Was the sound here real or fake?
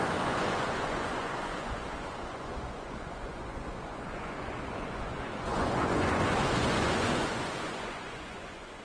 fake